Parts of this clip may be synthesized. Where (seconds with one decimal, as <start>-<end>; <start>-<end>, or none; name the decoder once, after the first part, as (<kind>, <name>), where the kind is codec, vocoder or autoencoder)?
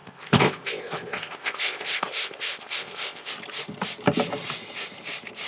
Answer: 0.0-3.3 (codec, ZipCodec)